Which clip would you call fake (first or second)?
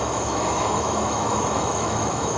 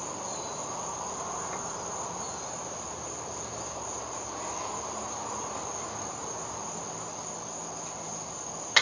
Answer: first